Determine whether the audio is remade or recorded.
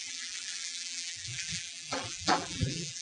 remade